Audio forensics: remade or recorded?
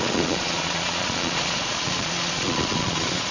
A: remade